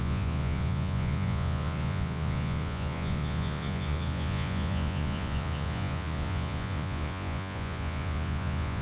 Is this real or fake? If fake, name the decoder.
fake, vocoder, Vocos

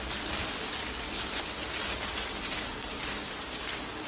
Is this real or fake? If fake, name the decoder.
real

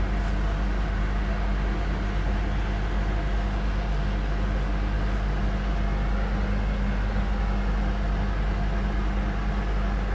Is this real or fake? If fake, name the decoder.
real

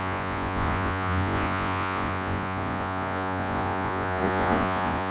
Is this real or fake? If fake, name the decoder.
fake, vocoder, Vocos